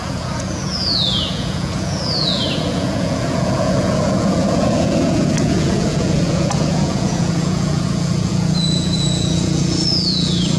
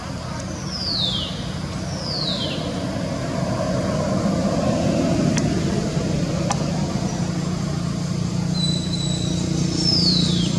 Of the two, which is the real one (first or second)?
second